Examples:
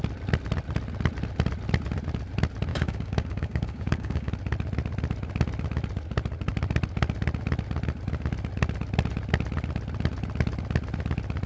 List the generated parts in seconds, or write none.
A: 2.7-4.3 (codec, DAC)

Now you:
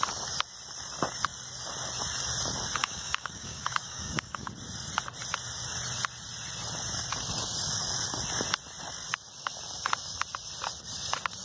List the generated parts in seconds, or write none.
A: 2.8-4.5 (codec, DAC)